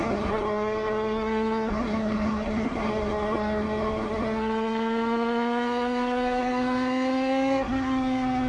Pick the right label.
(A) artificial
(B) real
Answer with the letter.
A